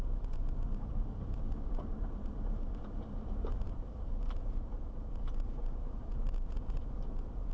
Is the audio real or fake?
fake